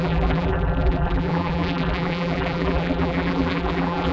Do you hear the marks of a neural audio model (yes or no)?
yes